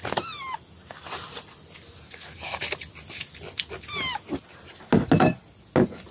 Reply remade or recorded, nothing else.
recorded